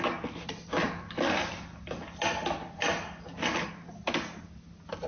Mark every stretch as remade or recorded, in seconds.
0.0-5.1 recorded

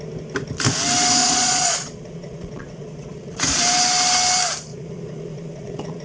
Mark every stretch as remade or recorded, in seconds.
0.0-1.2 recorded; 1.2-3.6 remade; 3.6-4.7 recorded; 4.7-6.0 remade

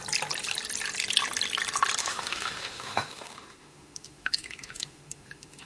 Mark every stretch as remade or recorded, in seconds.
0.0-2.0 recorded; 2.0-5.7 remade

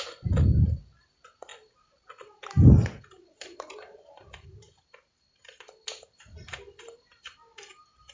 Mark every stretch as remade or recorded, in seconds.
0.0-8.1 recorded

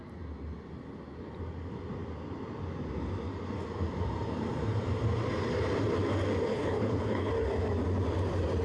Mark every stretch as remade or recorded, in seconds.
0.0-6.5 recorded; 6.5-7.3 remade; 7.3-8.6 recorded